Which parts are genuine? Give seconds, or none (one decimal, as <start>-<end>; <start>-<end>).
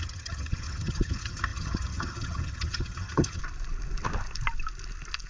3.4-5.3